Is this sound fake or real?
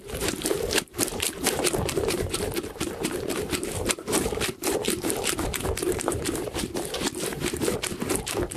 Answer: fake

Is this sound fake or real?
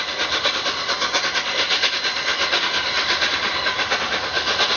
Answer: real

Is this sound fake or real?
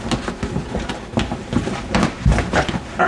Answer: real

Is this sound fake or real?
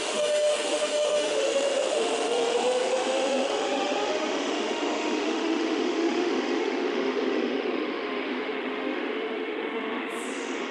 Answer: fake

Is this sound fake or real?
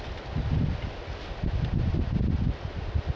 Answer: real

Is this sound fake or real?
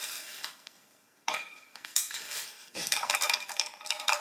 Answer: fake